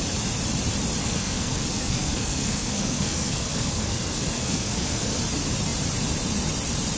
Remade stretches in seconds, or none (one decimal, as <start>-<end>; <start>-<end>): 1.0-5.2